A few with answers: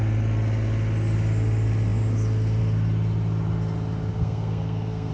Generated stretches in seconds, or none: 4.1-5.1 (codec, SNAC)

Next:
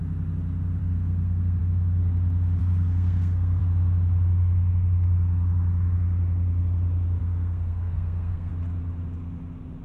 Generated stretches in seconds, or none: 0.8-1.6 (codec, SNAC); 2.6-3.6; 7.2-8.5

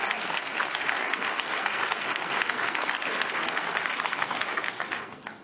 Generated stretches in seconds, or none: 0.0-5.4 (codec, SNAC)

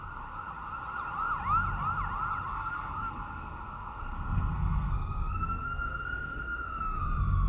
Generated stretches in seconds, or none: 2.5-7.0 (codec, SNAC)

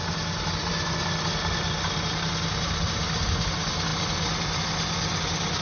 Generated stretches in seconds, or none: none

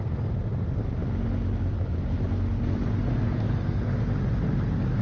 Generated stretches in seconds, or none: 3.1-3.9 (codec, SNAC)

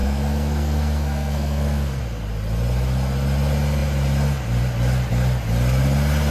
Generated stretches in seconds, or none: 0.0-2.0 (codec, SNAC)

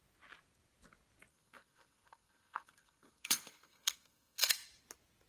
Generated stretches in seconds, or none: 1.3-4.5 (codec, SNAC)